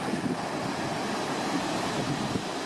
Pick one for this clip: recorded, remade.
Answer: remade